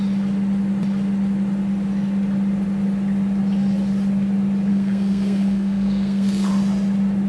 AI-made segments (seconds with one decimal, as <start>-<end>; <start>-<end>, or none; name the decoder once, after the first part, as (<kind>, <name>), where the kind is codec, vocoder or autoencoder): 4.7-6.5 (codec, SNAC)